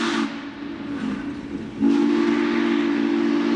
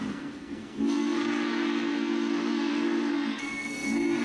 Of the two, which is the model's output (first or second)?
second